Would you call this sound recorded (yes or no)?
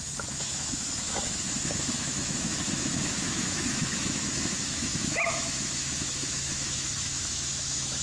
no